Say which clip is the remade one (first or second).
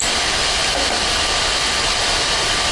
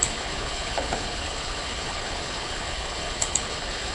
second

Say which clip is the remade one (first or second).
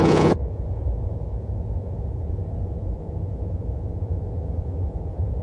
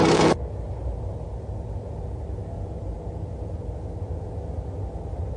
first